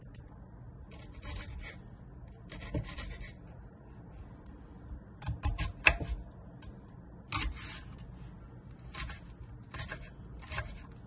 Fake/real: real